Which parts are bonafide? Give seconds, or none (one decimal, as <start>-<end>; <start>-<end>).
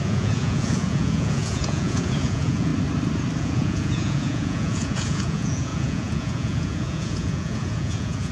2.7-3.4